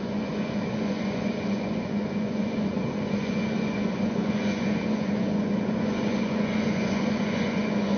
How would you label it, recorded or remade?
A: remade